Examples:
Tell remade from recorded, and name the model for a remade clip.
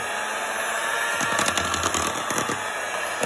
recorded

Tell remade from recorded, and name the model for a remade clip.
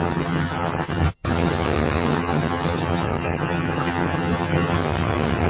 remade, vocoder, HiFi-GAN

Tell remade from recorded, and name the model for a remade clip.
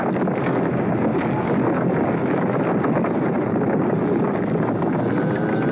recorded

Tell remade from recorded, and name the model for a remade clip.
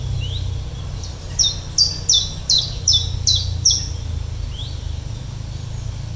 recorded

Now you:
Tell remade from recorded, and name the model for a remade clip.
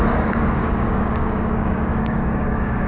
remade, codec, DAC